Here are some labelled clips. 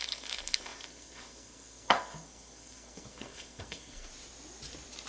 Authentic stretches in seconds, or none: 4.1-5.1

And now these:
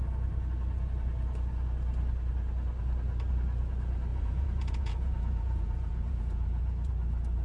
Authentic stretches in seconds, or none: 0.0-4.1; 6.9-7.4

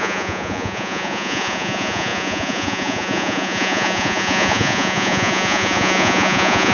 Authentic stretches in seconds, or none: none